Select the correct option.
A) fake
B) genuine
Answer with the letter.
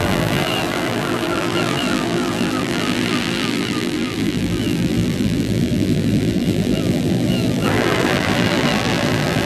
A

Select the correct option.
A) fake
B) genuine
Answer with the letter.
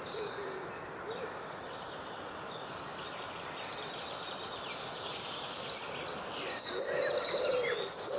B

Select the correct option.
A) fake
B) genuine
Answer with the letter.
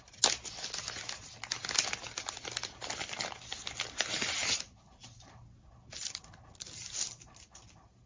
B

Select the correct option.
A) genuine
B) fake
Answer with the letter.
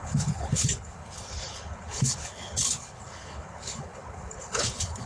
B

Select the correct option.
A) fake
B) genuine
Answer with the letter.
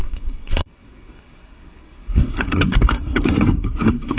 A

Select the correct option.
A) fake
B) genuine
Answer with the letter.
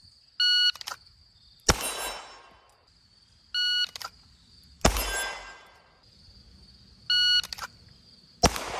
B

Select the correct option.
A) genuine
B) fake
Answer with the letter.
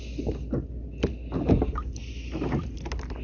A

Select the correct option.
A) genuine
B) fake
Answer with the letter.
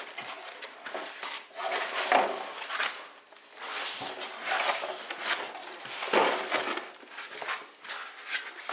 A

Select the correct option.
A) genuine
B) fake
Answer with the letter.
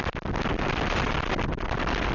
A